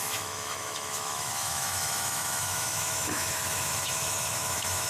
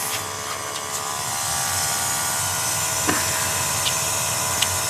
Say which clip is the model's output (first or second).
first